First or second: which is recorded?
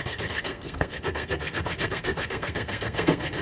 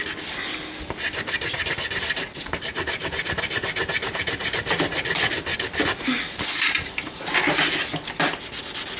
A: second